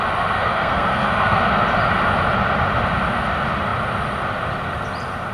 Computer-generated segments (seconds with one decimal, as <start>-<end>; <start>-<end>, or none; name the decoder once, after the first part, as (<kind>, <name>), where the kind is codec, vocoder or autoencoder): 0.4-1.5 (codec, SNAC)